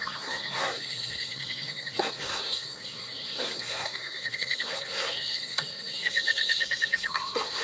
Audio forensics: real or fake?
fake